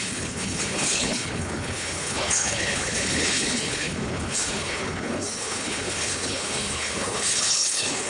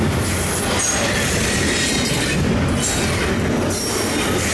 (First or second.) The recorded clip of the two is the second